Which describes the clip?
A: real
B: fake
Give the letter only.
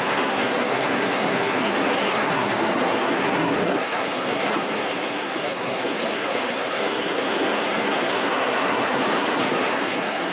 B